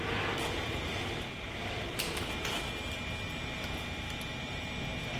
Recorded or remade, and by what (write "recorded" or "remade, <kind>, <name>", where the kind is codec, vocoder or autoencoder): recorded